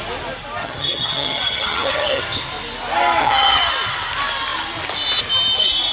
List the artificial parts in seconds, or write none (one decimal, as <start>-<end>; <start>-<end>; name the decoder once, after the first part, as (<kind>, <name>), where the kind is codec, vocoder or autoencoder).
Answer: 0.6-2.2 (vocoder, HiFi-GAN); 3.2-3.7